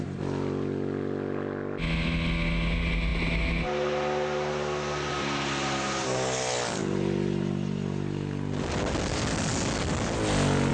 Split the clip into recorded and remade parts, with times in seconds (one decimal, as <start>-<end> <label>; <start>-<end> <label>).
0.0-10.7 recorded